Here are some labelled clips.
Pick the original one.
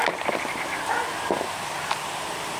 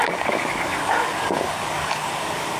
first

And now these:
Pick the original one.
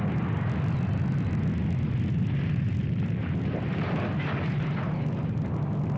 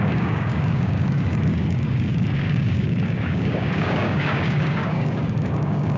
first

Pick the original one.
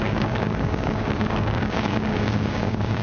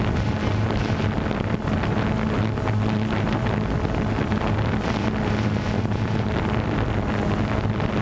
second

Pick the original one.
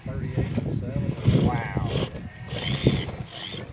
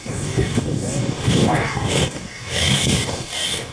first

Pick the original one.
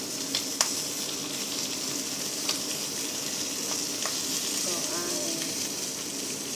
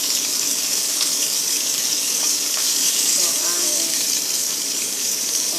first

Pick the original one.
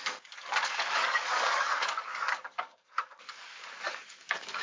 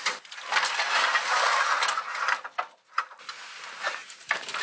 second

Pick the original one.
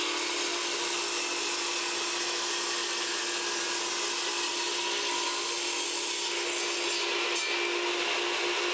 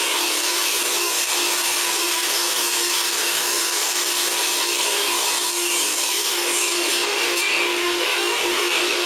first